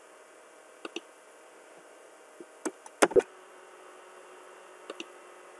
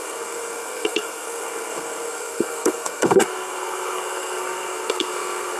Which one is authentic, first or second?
first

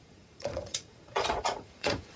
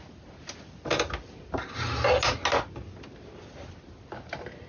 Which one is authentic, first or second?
second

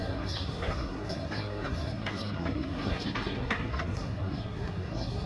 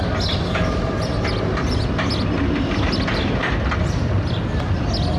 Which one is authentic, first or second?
second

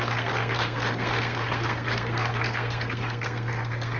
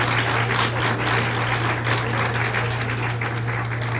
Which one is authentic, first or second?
second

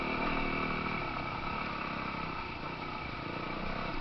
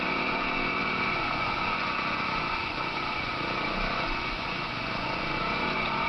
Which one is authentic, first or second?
first